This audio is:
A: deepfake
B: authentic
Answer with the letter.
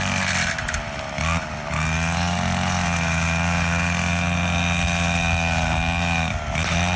B